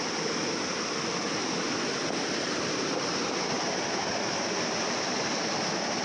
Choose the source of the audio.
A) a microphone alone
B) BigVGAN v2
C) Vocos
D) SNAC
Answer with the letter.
A